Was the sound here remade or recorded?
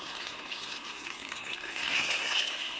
remade